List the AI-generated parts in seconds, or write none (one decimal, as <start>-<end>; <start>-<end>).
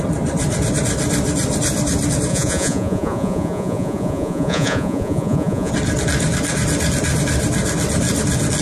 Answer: 2.3-5.7